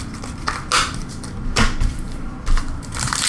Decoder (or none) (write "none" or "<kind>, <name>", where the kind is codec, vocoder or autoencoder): none